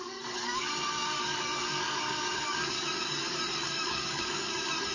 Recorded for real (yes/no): no